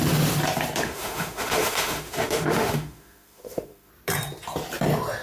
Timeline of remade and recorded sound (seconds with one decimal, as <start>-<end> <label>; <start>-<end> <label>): 0.0-0.8 recorded; 0.8-3.9 remade; 3.9-5.2 recorded

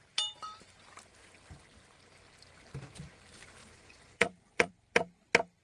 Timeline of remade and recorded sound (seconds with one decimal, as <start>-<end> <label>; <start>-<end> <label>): 0.0-3.6 recorded; 3.6-4.7 remade; 4.7-5.6 recorded

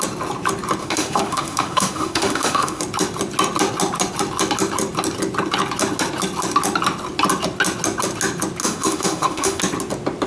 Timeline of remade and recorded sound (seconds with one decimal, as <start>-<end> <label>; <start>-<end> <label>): 0.0-0.8 recorded; 0.8-2.8 remade; 2.8-8.6 recorded; 8.6-9.6 remade; 9.6-10.3 recorded

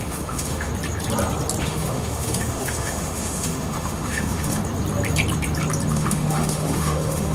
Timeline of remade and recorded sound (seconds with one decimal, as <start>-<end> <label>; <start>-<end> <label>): 0.0-0.7 remade; 0.7-1.6 recorded; 1.6-4.6 remade; 4.6-5.9 recorded; 5.9-7.3 remade